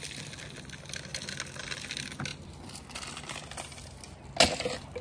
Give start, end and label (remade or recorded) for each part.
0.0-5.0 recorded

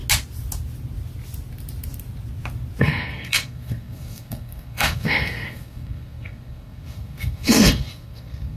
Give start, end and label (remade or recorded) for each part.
0.0-2.8 recorded; 2.8-8.6 remade

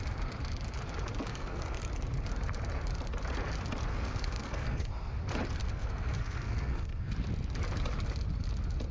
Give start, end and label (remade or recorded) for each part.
0.0-1.3 recorded; 1.3-1.8 remade; 1.8-3.9 recorded; 3.9-4.9 remade; 4.9-5.6 recorded; 5.6-7.1 remade; 7.1-8.9 recorded

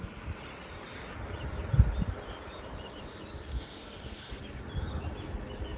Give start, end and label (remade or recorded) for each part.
0.0-3.5 recorded; 3.5-4.4 remade; 4.4-5.8 recorded